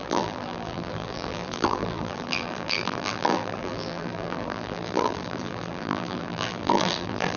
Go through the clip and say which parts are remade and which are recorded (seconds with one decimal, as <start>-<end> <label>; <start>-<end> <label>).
0.0-7.4 remade

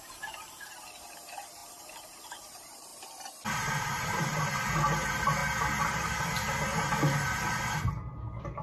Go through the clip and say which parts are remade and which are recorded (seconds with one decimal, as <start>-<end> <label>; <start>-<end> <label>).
0.0-2.9 remade; 2.9-3.7 recorded; 3.7-5.4 remade; 5.4-7.9 recorded; 7.9-8.6 remade

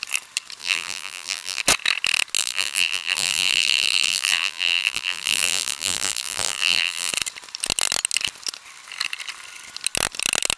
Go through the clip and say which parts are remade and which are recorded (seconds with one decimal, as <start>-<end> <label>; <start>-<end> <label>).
0.0-0.6 recorded; 0.6-1.6 remade; 1.6-2.4 recorded; 2.4-7.1 remade; 7.1-10.6 recorded

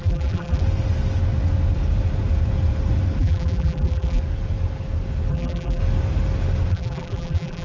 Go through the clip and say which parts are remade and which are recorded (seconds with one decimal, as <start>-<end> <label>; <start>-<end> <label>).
0.0-0.6 remade; 0.6-3.2 recorded; 3.2-4.2 remade; 4.2-5.3 recorded; 5.3-5.8 remade; 5.8-6.7 recorded; 6.7-7.6 remade

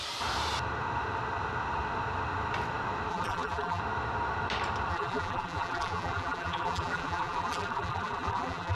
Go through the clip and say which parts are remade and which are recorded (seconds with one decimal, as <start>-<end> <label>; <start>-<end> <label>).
0.0-3.1 recorded; 3.1-3.8 remade; 3.8-4.9 recorded; 4.9-8.8 remade